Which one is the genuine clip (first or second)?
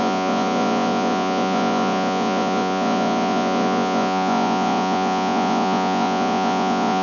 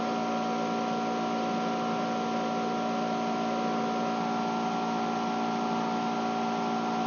second